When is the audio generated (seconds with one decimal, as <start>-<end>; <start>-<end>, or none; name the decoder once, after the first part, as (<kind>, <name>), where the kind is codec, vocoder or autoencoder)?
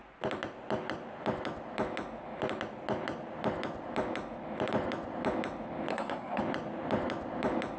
5.9-6.4 (codec, SNAC)